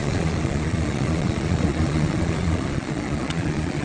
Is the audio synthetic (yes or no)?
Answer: yes